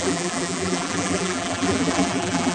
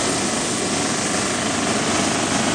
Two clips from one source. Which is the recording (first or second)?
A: second